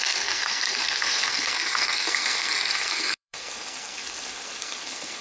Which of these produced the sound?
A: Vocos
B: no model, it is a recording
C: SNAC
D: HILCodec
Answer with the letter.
C